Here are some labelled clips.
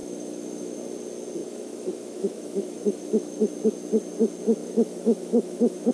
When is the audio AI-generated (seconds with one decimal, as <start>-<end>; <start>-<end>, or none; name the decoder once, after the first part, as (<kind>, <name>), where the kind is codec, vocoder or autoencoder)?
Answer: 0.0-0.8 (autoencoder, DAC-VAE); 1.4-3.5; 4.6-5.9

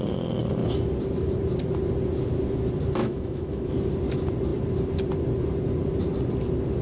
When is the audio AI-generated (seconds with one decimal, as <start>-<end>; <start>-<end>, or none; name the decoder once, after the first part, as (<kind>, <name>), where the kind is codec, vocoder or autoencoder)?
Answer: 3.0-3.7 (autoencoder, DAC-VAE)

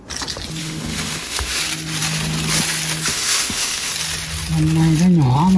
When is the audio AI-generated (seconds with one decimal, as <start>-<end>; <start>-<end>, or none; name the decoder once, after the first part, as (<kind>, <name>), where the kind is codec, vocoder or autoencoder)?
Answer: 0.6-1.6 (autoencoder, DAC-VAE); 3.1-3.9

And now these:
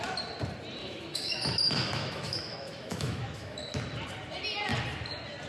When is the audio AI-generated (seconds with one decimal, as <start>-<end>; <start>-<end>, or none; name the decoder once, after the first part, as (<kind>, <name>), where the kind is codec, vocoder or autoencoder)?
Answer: 0.8-3.7 (autoencoder, DAC-VAE)

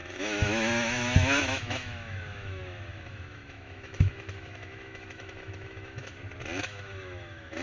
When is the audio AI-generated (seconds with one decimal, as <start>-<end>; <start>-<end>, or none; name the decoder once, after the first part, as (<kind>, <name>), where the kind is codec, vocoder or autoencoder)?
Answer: 0.0-6.1 (autoencoder, DAC-VAE); 6.6-7.6